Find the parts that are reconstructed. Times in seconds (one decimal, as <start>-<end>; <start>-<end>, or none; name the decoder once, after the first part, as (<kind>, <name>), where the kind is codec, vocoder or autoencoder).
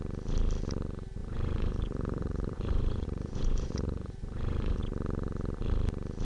1.2-4.8 (vocoder, Vocos)